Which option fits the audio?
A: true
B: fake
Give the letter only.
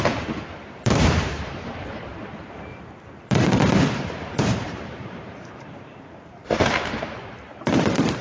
B